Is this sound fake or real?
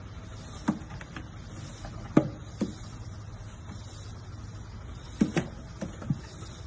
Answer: real